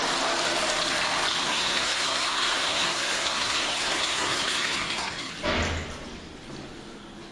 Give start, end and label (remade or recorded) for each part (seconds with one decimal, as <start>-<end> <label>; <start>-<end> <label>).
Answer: 0.0-1.4 recorded; 1.4-5.3 remade; 5.3-7.3 recorded